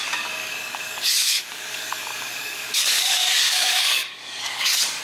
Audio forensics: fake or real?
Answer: fake